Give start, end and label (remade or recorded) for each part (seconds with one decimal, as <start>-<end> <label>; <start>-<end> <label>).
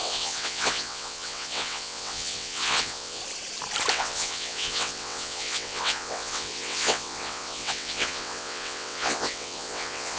0.0-3.2 remade; 3.2-3.9 recorded; 3.9-10.2 remade